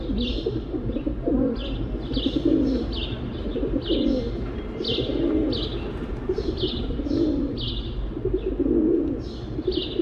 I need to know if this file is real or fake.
real